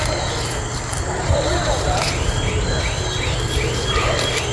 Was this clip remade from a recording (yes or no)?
no